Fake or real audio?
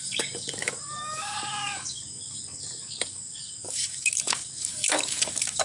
fake